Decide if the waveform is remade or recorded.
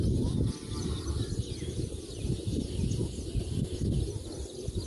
recorded